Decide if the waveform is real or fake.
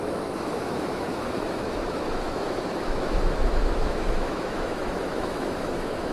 fake